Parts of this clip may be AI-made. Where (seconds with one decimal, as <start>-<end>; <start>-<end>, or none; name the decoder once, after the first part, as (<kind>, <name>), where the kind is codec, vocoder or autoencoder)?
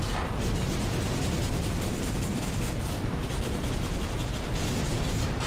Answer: 1.9-4.0 (vocoder, BigVGAN v2)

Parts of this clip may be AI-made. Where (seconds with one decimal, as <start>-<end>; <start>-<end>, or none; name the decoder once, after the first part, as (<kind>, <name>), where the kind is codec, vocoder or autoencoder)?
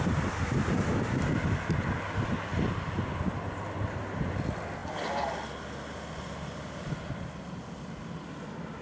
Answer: none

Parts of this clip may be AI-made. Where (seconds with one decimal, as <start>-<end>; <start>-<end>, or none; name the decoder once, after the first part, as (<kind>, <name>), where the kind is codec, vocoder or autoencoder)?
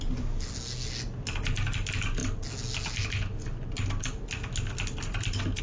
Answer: none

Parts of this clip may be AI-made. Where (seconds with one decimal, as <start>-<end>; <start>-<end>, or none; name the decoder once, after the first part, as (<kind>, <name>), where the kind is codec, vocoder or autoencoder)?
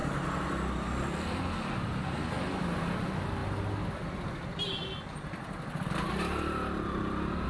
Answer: none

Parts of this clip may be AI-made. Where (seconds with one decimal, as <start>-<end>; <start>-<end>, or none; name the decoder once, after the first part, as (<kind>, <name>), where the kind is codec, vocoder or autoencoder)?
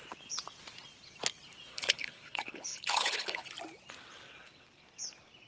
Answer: 1.7-3.5 (codec, HILCodec)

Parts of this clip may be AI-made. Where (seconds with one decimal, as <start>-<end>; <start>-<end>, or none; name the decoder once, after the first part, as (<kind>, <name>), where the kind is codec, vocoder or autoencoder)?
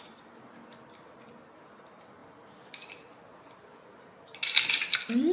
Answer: none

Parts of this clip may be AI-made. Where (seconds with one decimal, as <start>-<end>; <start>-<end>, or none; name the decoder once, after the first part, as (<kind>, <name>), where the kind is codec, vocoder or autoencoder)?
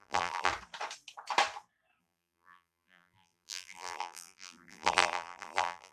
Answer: 0.0-0.5 (vocoder, BigVGAN v2); 2.0-5.9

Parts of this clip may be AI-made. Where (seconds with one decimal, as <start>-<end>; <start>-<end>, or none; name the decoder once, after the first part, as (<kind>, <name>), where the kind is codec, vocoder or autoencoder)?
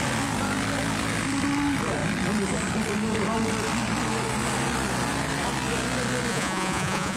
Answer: 6.3-7.2 (vocoder, Vocos)